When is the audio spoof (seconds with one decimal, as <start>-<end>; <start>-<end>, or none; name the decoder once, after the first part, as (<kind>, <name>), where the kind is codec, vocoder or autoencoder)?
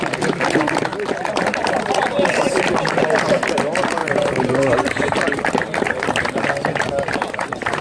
none